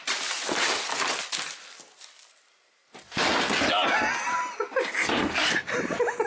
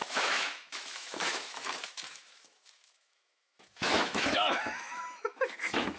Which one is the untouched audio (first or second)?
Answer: first